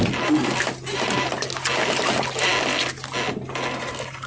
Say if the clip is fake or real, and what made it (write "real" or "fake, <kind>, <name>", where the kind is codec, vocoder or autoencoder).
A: real